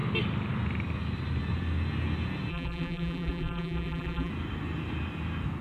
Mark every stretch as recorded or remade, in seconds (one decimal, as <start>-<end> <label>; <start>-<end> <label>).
0.0-2.5 recorded; 2.5-4.3 remade; 4.3-5.6 recorded